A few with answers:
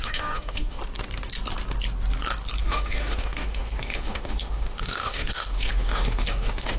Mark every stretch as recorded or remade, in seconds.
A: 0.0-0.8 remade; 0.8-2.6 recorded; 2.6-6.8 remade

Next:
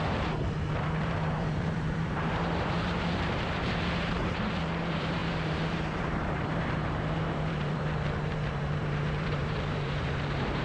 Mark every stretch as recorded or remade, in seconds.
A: 0.0-10.6 remade

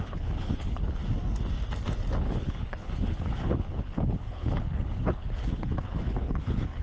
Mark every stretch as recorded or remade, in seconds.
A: 0.0-1.0 remade; 1.0-2.2 recorded; 2.2-6.8 remade

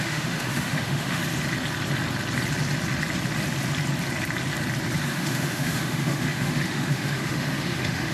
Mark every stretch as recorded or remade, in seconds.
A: 0.0-1.2 remade; 1.2-5.1 recorded; 5.1-8.1 remade

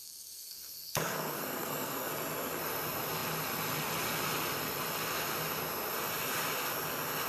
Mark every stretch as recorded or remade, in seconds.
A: 0.0-2.1 remade; 2.1-7.3 recorded

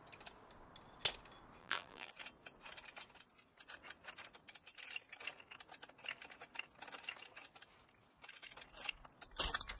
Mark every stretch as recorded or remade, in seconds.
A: 0.0-1.6 recorded; 1.6-2.1 remade; 2.1-9.8 recorded